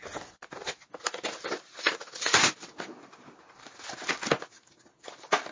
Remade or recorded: recorded